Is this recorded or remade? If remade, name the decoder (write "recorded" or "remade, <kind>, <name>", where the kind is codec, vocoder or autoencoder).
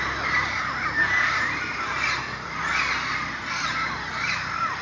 recorded